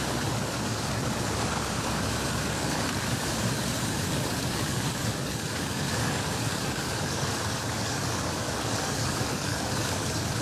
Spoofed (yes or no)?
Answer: yes